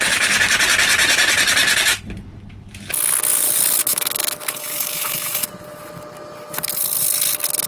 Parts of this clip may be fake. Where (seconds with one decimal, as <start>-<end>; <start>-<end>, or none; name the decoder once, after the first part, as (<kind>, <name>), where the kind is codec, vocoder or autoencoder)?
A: 3.8-5.5 (autoencoder, DAC-VAE)